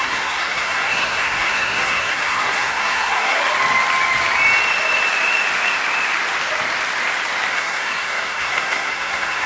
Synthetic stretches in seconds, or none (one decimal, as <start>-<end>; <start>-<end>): 0.0-3.4; 7.5-9.5

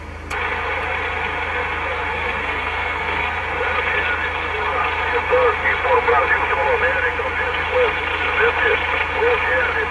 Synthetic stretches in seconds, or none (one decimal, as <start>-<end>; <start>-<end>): 2.1-3.4